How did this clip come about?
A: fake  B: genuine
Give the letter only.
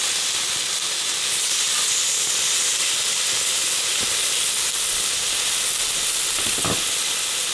B